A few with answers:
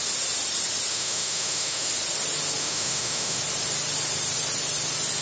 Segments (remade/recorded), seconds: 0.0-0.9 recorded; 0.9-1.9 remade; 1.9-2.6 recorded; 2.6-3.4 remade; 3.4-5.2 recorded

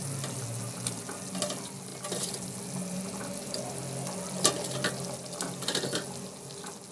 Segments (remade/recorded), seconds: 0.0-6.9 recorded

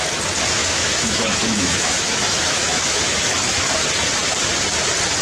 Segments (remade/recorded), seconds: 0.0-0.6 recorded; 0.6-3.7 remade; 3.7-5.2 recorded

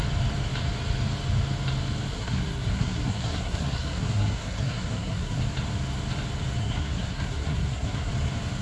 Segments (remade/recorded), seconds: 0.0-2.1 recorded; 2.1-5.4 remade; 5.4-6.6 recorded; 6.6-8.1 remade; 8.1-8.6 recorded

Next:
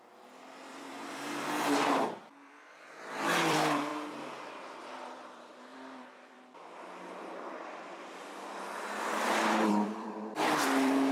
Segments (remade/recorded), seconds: 0.0-3.9 remade; 3.9-4.8 recorded; 4.8-11.1 remade

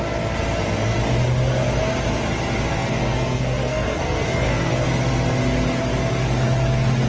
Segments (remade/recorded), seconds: 0.0-2.7 recorded; 2.7-4.7 remade; 4.7-7.1 recorded

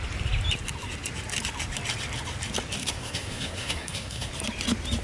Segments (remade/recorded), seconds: 0.0-2.8 recorded; 2.8-4.3 remade; 4.3-5.0 recorded

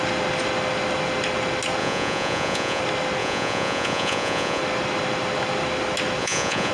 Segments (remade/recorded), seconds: 0.0-1.8 recorded; 1.8-2.8 remade; 2.8-3.2 recorded; 3.2-4.6 remade; 4.6-6.2 recorded; 6.2-6.7 remade